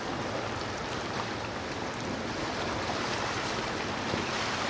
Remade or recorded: recorded